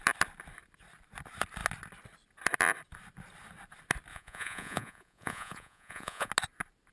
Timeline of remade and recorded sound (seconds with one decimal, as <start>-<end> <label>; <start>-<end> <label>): 0.0-4.1 recorded; 4.1-6.3 remade; 6.3-6.9 recorded